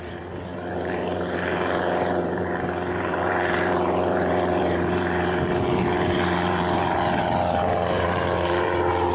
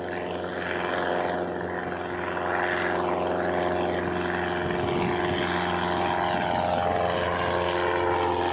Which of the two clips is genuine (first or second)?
second